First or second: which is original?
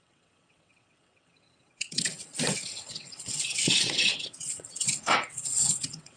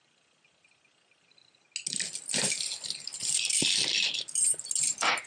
second